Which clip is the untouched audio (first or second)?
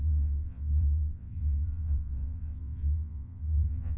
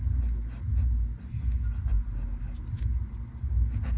second